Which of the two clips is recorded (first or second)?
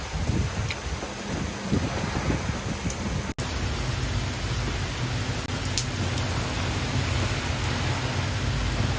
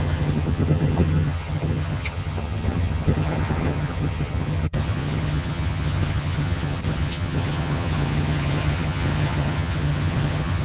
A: first